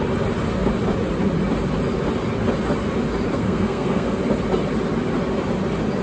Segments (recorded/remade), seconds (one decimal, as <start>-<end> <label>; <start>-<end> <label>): 0.0-3.3 recorded; 3.3-4.2 remade; 4.2-6.0 recorded